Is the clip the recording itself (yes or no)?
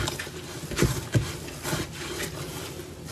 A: yes